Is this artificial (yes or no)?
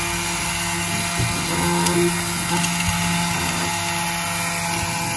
no